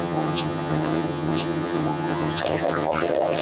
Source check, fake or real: fake